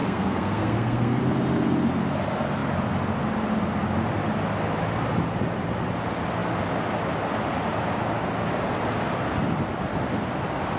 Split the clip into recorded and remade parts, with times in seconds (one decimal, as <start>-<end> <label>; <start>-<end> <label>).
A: 0.0-1.2 remade; 1.2-10.8 recorded